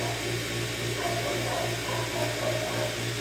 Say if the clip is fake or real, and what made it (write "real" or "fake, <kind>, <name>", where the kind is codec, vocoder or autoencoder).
real